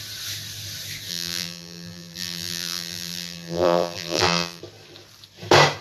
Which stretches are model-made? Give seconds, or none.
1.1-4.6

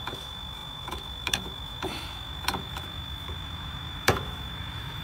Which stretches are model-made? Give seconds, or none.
0.0-5.0

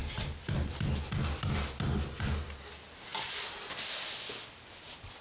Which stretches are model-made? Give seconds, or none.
none

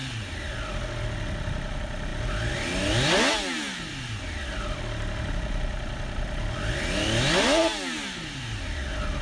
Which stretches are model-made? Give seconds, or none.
none

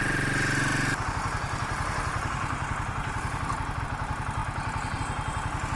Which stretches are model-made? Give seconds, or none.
none